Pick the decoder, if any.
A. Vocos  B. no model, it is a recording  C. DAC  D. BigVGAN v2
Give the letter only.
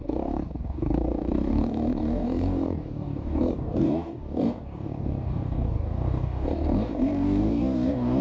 C